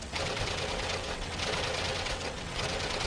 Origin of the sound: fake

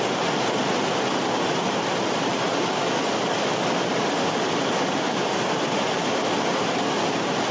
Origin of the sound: real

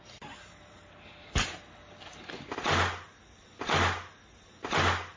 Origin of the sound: real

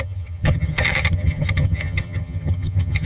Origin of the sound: fake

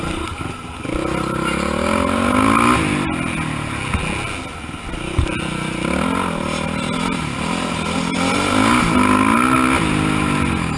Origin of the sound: real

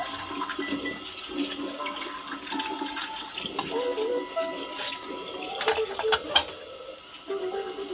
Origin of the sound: real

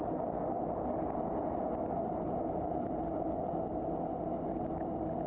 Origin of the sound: real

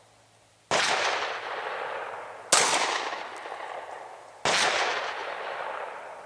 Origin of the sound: real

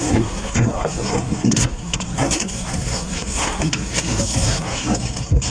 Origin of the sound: fake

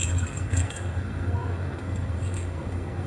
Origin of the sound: fake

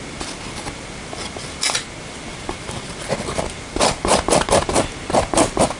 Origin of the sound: real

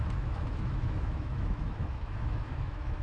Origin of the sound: fake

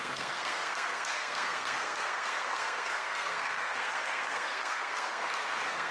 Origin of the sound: fake